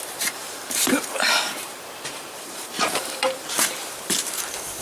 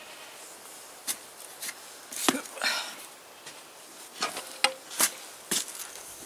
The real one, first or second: second